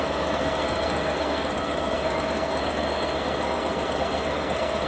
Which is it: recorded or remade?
remade